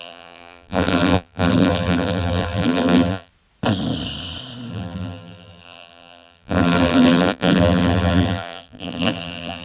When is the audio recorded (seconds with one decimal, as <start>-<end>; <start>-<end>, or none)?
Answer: 3.3-4.7